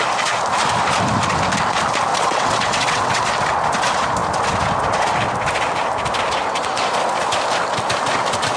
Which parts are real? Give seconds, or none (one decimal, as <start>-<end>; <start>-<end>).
0.0-2.1; 3.2-6.4; 6.9-8.6